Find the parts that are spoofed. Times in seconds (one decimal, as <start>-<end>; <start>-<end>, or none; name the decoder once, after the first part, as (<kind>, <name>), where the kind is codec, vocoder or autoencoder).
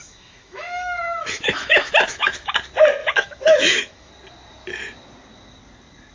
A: 0.0-2.5 (autoencoder, DAC-VAE); 3.0-4.1